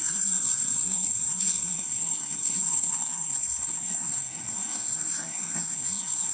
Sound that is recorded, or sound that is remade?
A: remade